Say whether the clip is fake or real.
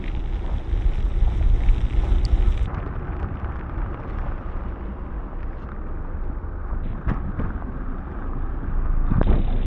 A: real